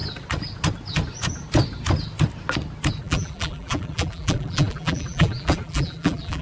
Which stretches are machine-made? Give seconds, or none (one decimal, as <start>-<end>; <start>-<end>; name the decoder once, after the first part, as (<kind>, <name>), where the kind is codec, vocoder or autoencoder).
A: 3.0-6.4 (vocoder, BigVGAN v2)